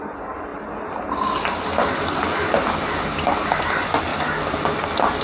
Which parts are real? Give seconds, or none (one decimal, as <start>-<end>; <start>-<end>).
0.0-5.2